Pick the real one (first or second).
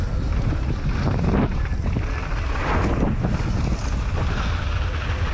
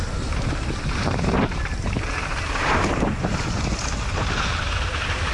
first